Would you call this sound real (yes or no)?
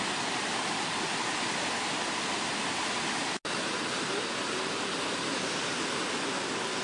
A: yes